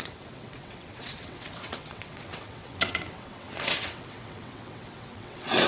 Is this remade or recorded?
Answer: remade